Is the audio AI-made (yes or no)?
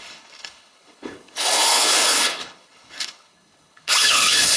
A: yes